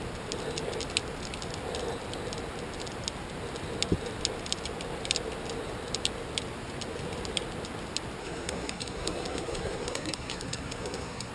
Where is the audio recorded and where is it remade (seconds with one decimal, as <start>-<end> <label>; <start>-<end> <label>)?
0.0-8.2 recorded; 8.2-11.3 remade